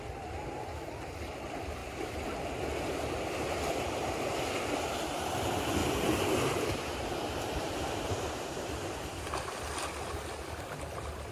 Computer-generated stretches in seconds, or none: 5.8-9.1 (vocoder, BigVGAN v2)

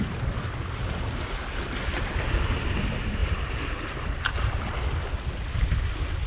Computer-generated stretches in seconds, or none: none

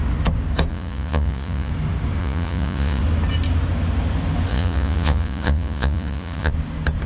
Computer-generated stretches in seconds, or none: 0.7-1.7 (vocoder, Vocos); 2.2-3.0; 4.5-6.5

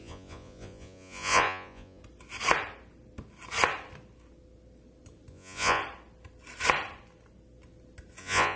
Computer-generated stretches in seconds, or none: 0.0-2.0 (vocoder, Vocos); 5.3-5.8; 8.2-8.6

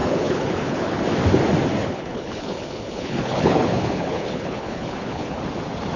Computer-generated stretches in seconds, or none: 0.0-1.0 (codec, HILCodec); 1.8-5.4

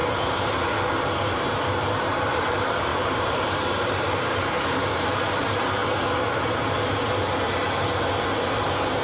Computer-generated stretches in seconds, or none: 2.0-5.8 (vocoder, BigVGAN v2); 8.6-9.0

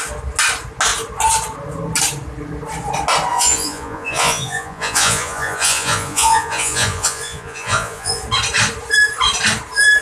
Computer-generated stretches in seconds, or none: 3.3-8.2 (vocoder, Vocos)

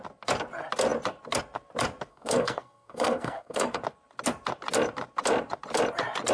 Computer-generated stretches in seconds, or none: 2.1-3.8 (codec, SNAC)